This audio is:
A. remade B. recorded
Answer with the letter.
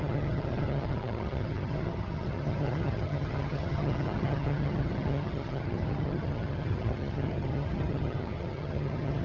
A